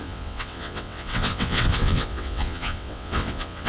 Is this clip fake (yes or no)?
yes